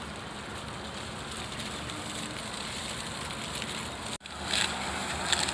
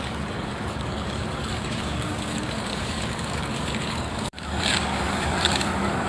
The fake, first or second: second